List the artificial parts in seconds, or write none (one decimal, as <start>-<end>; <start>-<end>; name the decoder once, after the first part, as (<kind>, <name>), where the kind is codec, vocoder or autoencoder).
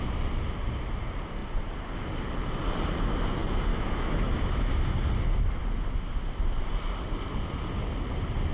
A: 3.7-4.7 (autoencoder, DAC-VAE)